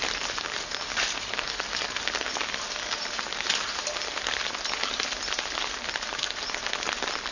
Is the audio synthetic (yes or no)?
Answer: no